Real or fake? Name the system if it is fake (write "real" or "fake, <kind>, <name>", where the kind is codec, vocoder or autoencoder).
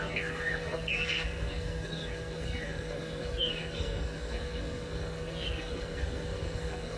fake, codec, SNAC